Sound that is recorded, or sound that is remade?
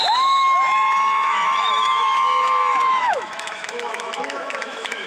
remade